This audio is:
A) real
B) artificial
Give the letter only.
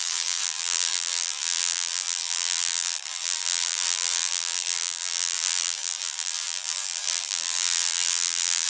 B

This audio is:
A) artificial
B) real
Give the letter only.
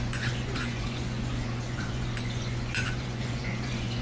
A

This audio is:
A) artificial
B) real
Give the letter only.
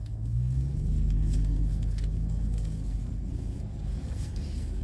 A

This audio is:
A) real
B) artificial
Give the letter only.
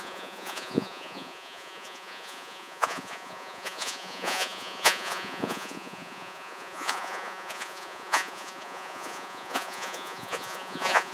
B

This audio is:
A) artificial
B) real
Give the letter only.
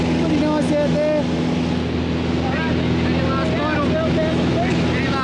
B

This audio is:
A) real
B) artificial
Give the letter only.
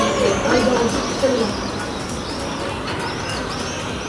A